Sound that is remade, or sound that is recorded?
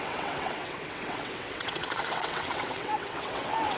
remade